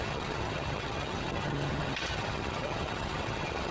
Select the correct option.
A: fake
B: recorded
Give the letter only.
A